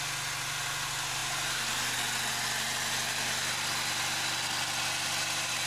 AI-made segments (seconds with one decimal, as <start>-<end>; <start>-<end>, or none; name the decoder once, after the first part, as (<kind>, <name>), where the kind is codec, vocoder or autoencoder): none